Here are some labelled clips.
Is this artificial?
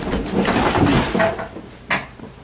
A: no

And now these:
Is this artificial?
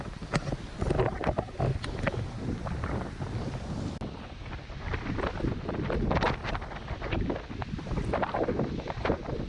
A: no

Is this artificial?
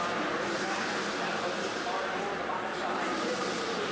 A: no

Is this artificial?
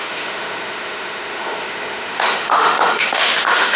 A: yes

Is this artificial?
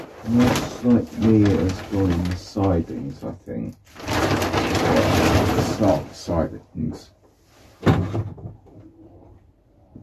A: no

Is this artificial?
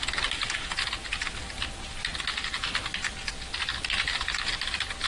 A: no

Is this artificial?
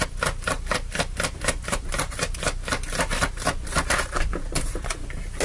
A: no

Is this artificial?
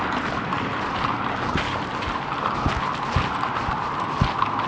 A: no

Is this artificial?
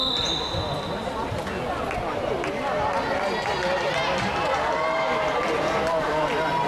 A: no